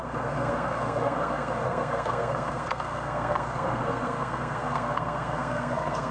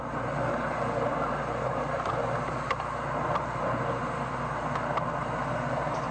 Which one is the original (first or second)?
second